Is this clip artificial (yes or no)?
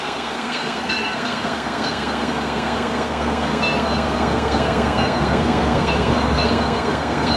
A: yes